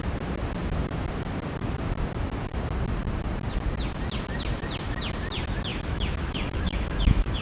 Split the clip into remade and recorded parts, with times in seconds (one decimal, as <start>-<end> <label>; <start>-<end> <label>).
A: 0.0-5.7 recorded; 5.7-7.4 remade